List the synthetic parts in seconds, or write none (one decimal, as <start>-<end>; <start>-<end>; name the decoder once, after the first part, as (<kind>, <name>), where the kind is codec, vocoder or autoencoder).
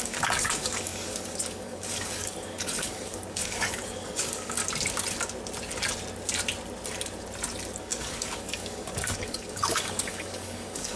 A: 0.0-4.6 (codec, DAC); 7.8-11.0